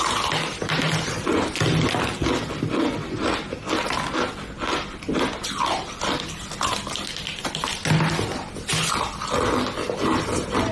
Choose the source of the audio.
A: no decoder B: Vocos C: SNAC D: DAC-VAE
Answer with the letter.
A